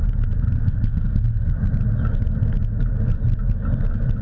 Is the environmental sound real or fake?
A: real